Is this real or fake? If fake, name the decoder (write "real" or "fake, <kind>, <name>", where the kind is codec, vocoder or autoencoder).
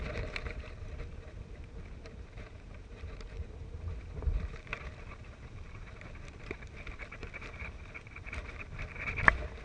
fake, vocoder, BigVGAN v2